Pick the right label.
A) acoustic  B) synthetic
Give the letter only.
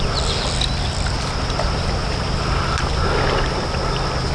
A